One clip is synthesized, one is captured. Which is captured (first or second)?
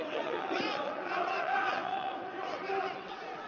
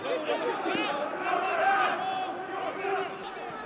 second